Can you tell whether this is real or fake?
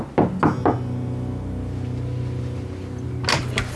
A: real